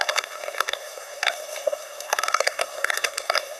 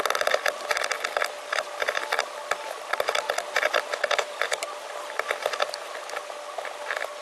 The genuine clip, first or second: second